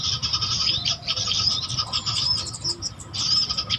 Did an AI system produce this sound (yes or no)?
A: no